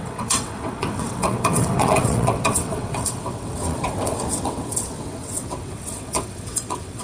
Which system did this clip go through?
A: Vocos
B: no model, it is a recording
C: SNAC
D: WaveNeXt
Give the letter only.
D